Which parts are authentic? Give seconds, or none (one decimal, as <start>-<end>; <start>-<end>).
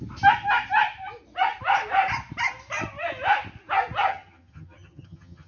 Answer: 0.0-4.1